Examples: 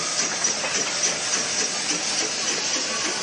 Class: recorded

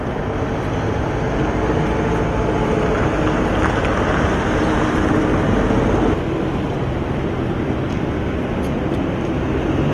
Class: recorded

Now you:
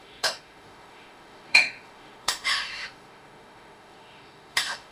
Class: remade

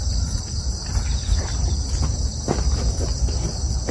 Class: recorded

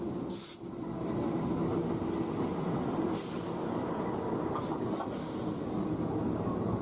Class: recorded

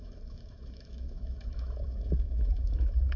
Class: remade